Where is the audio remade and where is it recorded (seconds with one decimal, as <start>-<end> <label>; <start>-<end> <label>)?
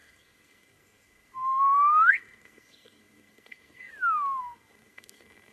0.0-3.9 remade; 3.9-4.4 recorded; 4.4-5.5 remade